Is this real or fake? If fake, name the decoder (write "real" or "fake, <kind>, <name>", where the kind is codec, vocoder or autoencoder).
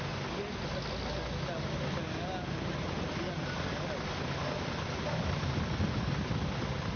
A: real